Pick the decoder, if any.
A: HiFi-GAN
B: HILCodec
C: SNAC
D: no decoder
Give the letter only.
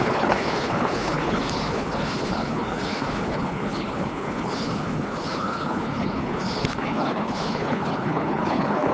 B